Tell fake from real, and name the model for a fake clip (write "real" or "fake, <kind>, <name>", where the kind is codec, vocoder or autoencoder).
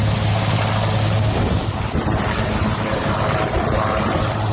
fake, vocoder, BigVGAN v2